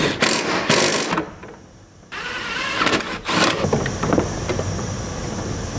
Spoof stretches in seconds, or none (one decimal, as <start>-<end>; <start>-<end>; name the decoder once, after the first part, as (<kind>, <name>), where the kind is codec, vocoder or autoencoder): 1.4-4.7 (vocoder, BigVGAN v2)